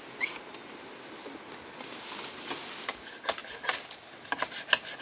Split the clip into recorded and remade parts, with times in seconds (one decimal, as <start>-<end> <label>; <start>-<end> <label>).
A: 0.0-5.0 recorded